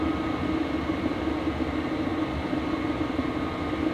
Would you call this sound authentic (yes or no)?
yes